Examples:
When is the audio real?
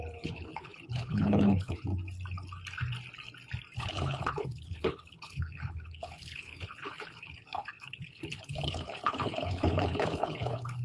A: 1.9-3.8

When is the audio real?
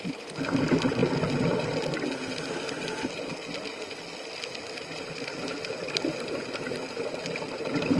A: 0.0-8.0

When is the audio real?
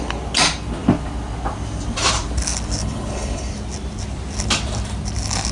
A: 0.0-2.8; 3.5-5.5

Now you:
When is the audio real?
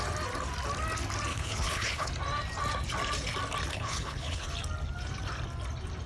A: 0.0-1.3; 2.1-3.7; 4.5-6.1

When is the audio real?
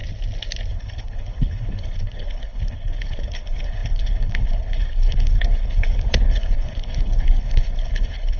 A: 0.0-0.7